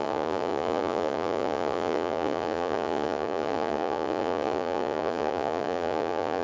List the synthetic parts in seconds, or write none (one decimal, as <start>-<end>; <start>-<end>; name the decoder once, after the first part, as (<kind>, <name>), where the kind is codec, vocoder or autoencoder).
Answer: 0.0-6.4 (vocoder, Vocos)